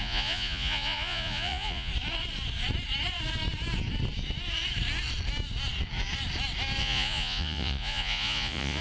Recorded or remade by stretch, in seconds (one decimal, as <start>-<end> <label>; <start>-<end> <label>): 0.0-1.9 remade; 1.9-6.8 recorded; 6.8-8.8 remade